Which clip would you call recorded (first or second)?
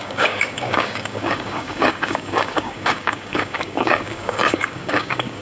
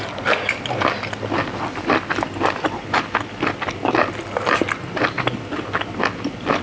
second